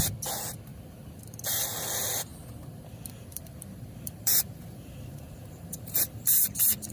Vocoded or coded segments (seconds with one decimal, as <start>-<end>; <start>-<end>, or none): 0.7-1.2; 2.3-6.4